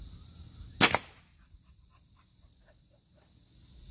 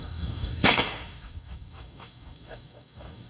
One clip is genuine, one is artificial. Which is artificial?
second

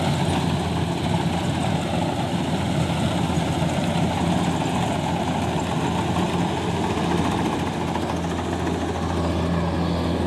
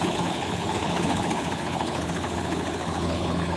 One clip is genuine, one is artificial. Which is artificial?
second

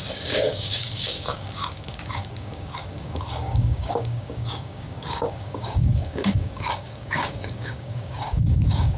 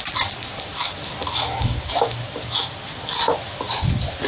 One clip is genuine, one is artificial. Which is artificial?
first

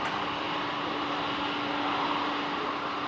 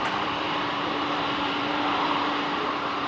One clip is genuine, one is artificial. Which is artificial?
second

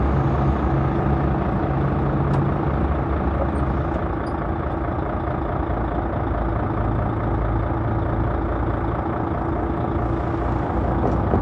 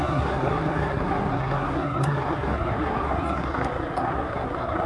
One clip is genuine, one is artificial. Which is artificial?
second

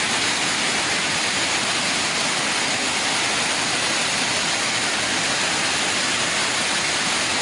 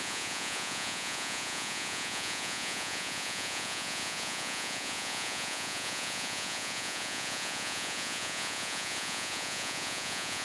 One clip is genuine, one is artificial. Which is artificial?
second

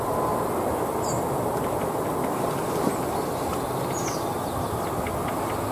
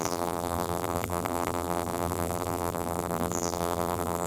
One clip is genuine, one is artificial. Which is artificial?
second